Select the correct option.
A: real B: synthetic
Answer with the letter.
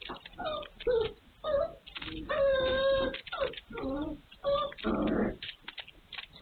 A